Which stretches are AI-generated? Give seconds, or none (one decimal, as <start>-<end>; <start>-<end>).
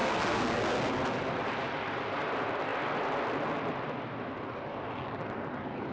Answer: 0.0-0.6